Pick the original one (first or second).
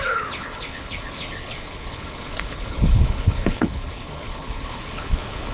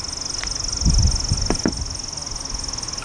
second